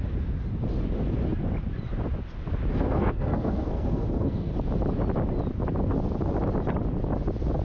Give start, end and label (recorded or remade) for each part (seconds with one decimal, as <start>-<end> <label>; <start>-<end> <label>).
0.0-2.7 recorded; 2.7-4.5 remade; 4.5-7.6 recorded